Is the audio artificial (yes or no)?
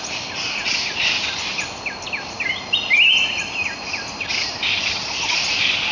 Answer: no